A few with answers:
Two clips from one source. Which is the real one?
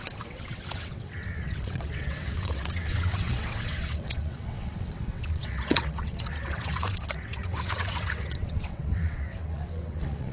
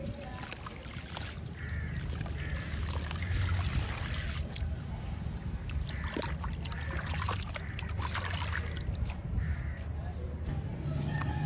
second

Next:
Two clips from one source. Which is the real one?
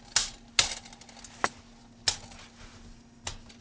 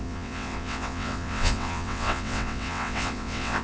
first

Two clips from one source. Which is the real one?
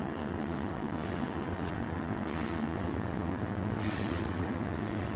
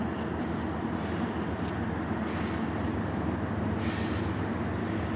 second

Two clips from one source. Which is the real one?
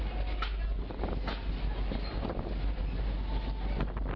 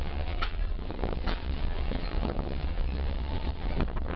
first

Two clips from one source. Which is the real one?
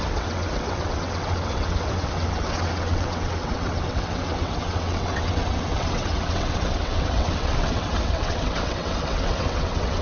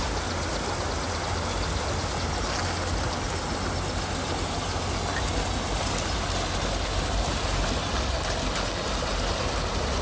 second